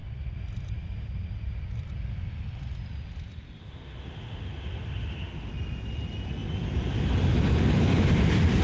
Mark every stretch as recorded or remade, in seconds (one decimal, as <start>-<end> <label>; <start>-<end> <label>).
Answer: 0.0-3.6 recorded; 3.6-5.5 remade; 5.5-8.6 recorded